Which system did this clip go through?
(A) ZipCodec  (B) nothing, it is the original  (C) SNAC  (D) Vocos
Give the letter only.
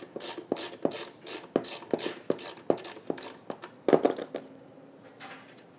B